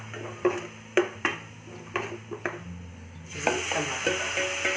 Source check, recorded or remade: recorded